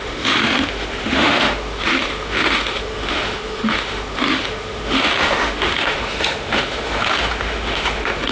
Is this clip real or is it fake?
fake